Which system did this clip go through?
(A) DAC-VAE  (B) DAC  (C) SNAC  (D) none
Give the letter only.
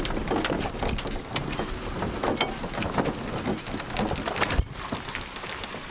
D